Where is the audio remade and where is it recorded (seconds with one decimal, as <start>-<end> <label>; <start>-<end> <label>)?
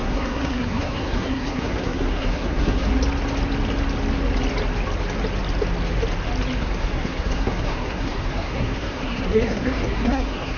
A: 0.0-2.9 remade; 2.9-6.6 recorded; 6.6-10.6 remade